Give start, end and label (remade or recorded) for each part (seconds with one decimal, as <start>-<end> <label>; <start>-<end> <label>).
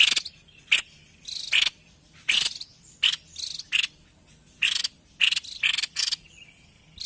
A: 0.0-7.1 recorded